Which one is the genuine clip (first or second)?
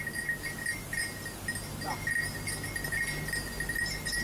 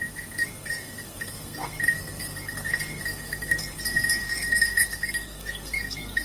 first